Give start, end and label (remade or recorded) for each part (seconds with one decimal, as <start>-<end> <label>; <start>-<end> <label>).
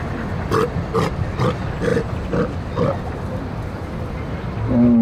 0.0-5.0 recorded